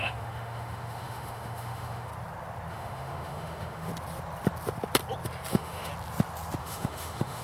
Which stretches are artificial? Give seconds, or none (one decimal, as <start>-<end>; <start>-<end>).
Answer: 0.0-2.1; 2.7-3.9; 5.5-5.9; 6.6-7.4